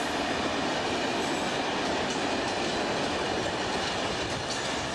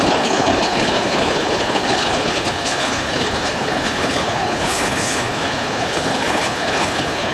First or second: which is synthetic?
second